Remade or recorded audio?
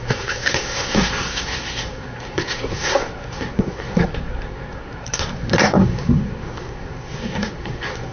remade